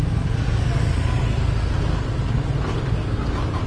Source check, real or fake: real